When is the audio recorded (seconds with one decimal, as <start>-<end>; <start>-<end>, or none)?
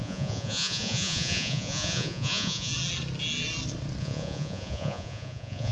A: 2.7-4.0